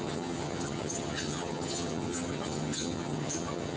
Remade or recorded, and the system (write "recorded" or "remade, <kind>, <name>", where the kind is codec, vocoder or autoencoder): remade, vocoder, HiFi-GAN